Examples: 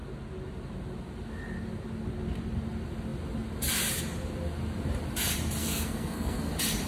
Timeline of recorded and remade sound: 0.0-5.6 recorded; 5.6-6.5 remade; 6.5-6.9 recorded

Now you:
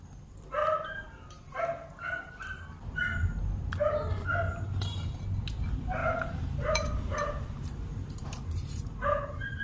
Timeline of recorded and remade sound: 0.0-0.6 recorded; 0.6-1.6 remade; 1.6-4.5 recorded; 4.5-5.2 remade; 5.2-6.0 recorded; 6.0-8.8 remade; 8.8-9.6 recorded

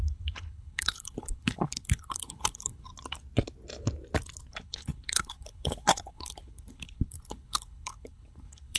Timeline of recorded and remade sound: 0.0-2.9 remade; 2.9-4.5 recorded; 4.5-8.8 remade

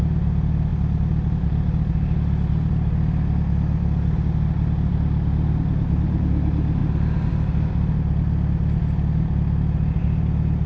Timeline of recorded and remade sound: 0.0-10.7 recorded

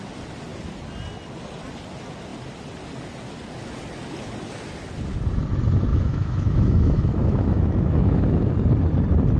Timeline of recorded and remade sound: 0.0-5.9 recorded; 5.9-8.5 remade; 8.5-9.4 recorded